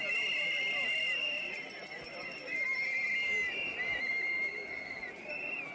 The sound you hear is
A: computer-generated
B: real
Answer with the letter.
B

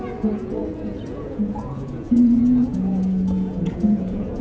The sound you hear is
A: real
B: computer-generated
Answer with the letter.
B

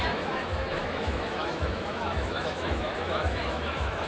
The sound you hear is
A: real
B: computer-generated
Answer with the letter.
B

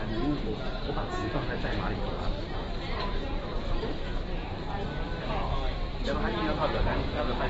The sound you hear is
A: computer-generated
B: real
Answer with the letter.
B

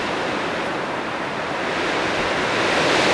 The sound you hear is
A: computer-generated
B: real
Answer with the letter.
B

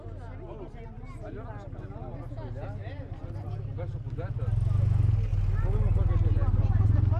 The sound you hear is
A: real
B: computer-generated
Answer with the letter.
A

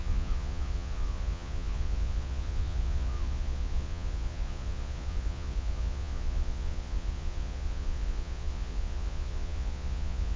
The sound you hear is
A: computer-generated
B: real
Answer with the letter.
A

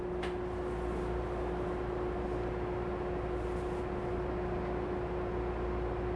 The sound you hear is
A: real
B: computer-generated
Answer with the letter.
A